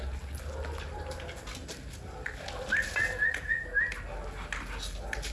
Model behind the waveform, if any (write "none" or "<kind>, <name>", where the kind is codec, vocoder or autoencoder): none